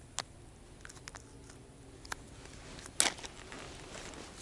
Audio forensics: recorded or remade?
recorded